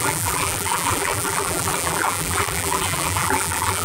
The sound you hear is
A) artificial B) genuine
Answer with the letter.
A